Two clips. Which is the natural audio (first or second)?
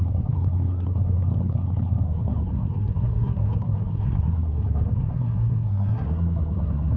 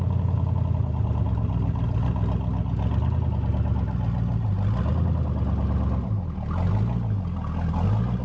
second